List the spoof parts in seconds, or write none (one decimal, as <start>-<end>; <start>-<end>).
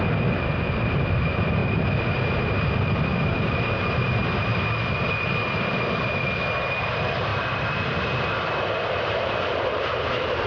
0.0-1.6; 2.6-4.5; 6.2-10.5